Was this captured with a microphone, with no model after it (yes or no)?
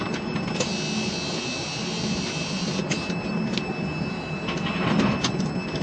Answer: yes